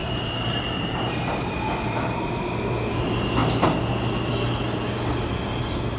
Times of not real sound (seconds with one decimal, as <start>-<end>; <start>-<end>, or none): 0.0-2.3